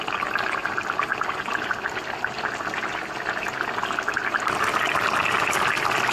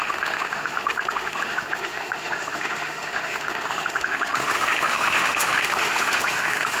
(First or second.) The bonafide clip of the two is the first